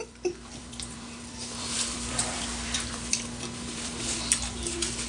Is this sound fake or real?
fake